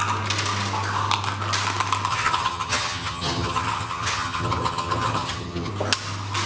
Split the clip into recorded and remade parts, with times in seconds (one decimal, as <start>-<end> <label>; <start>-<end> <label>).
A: 0.0-2.1 recorded; 2.1-5.7 remade; 5.7-6.5 recorded